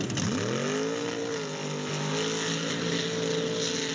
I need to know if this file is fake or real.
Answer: real